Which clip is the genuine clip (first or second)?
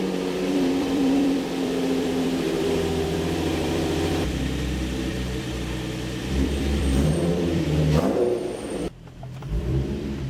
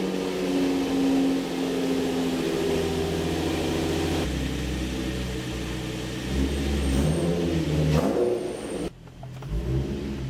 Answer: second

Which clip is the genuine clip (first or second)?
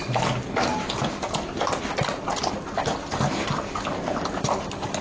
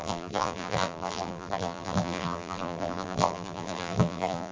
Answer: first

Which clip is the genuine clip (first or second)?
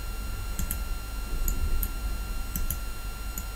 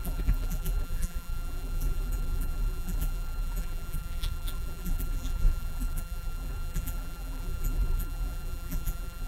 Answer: first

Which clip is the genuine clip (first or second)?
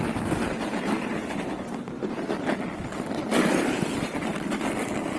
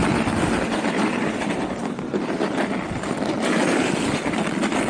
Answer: first